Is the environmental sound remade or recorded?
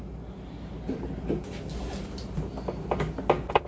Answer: recorded